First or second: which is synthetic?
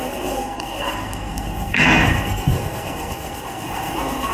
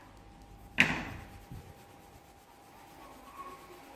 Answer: first